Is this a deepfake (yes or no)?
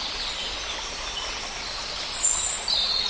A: no